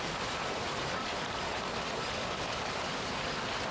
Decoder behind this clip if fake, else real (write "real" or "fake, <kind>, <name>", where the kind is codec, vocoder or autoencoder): real